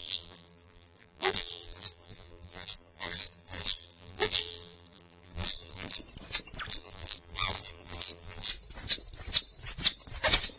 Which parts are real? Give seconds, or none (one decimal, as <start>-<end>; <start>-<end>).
6.0-6.7; 8.5-10.6